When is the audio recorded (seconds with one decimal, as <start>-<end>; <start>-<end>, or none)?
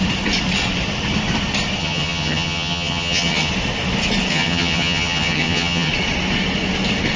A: 0.0-1.8; 3.5-4.3; 5.9-7.2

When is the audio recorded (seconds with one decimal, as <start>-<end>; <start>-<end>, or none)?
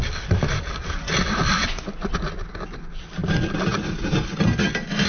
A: 0.0-5.1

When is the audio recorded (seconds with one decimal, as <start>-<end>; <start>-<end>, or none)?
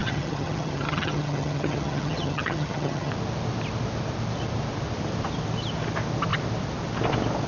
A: 3.1-7.5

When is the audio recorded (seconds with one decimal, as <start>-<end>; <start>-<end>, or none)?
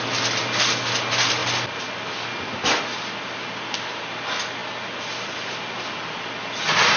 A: 0.0-7.0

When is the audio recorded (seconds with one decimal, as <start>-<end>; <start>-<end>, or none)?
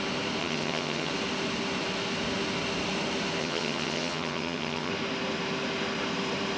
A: 0.0-0.4; 1.1-3.4; 4.9-6.6